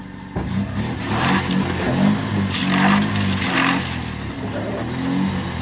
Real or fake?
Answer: real